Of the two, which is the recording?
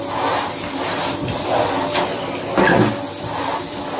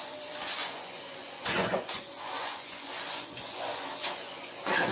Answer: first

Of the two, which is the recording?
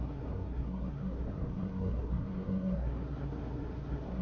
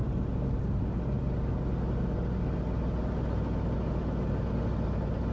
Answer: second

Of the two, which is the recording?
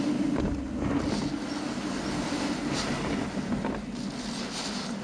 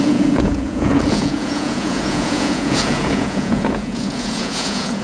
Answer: first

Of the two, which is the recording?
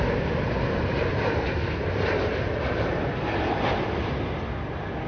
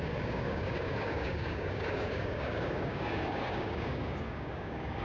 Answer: first